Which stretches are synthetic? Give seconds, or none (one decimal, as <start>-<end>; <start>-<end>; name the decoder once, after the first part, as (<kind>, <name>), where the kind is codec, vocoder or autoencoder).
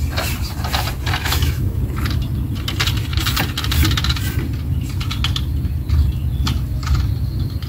1.2-1.8 (autoencoder, DAC-VAE)